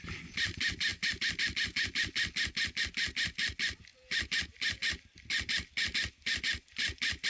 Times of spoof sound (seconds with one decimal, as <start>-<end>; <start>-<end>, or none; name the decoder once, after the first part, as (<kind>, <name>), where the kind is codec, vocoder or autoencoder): none